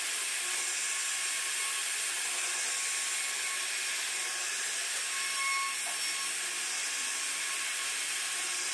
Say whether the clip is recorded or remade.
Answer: recorded